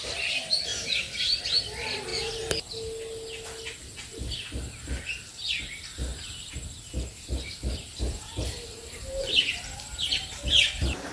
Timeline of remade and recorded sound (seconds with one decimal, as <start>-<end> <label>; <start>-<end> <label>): 0.0-0.7 recorded; 0.7-1.4 remade; 1.4-6.1 recorded; 6.1-11.1 remade